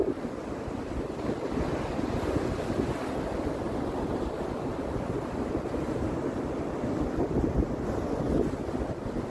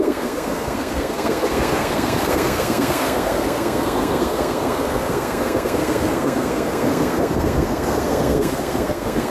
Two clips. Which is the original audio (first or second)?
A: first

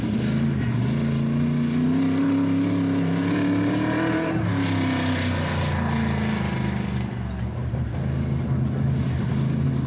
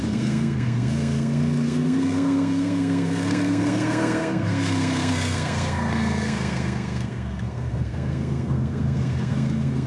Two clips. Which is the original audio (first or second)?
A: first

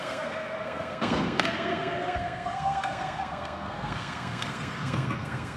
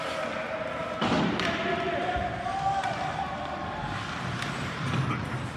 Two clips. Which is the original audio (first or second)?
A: second